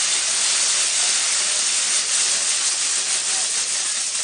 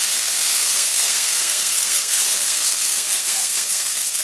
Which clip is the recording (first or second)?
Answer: first